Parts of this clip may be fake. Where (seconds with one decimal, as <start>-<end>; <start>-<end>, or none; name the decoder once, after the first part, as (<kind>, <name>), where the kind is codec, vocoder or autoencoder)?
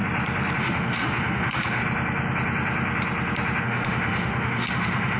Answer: 0.6-1.8 (autoencoder, DAC-VAE); 3.6-5.2